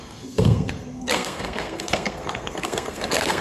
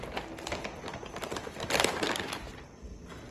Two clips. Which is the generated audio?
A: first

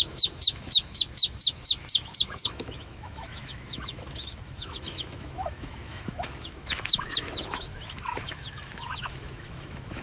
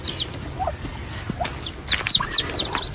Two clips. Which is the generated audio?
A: first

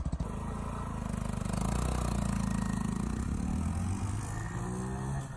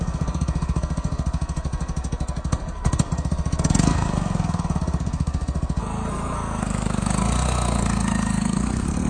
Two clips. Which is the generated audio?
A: second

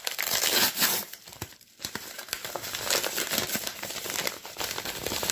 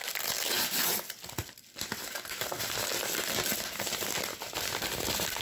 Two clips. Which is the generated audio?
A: first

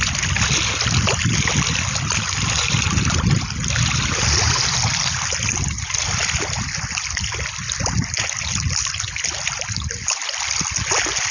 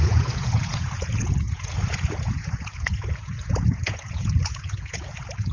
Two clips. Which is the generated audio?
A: second